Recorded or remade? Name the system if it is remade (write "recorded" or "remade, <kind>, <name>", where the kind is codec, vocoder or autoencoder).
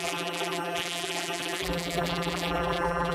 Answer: remade, vocoder, BigVGAN v2